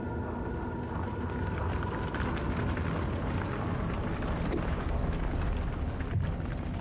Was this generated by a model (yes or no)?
no